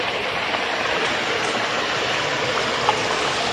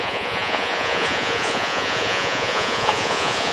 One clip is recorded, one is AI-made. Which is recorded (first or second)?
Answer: first